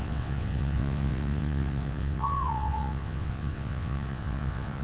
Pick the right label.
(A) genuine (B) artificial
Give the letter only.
B